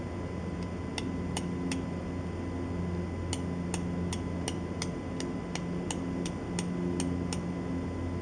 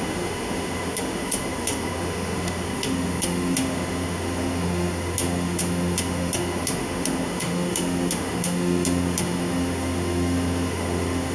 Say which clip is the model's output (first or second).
second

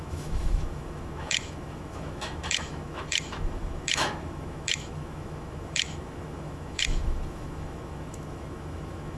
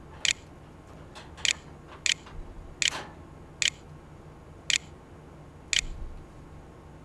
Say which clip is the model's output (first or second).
first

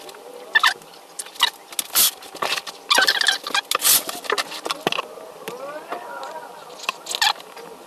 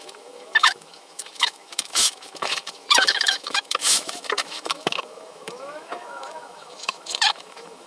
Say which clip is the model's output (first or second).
second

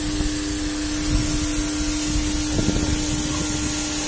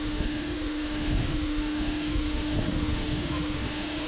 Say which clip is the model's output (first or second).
second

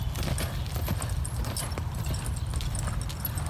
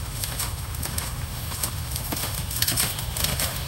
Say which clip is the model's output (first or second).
second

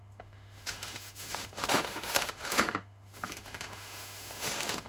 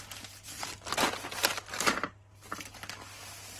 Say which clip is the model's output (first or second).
first